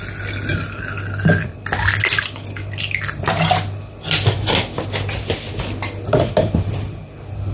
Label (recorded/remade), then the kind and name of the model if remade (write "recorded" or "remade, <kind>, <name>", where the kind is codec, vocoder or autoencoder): recorded